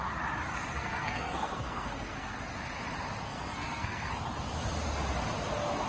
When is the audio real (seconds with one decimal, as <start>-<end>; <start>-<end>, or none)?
0.0-0.7; 2.4-3.3; 4.1-5.9